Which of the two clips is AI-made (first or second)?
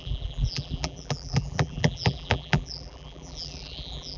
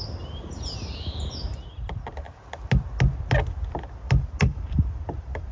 first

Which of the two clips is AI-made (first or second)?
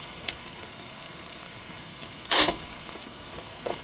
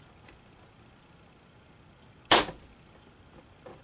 first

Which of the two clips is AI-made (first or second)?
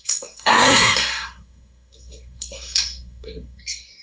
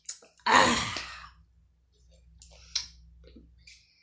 first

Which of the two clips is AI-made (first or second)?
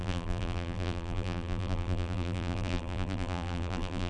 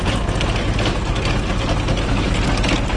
first